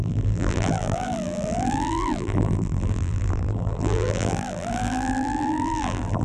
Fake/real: fake